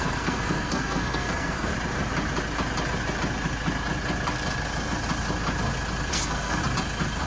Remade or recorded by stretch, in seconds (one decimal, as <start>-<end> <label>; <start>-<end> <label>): 0.0-1.7 remade; 1.7-6.1 recorded; 6.1-6.6 remade; 6.6-7.3 recorded